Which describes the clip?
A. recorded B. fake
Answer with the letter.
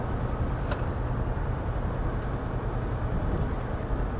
A